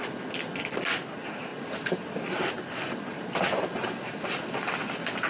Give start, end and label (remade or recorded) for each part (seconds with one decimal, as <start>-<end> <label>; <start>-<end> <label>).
0.0-1.5 recorded; 1.5-4.7 remade; 4.7-5.3 recorded